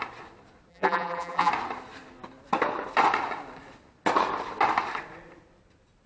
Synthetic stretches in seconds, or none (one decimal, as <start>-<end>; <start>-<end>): 0.7-1.5